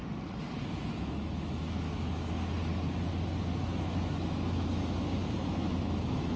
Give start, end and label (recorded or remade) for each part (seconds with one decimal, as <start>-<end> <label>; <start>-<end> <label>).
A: 0.0-0.9 recorded; 0.9-2.7 remade; 2.7-3.6 recorded; 3.6-6.4 remade